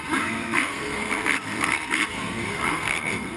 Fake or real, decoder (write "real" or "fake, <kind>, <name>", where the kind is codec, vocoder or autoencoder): fake, codec, SNAC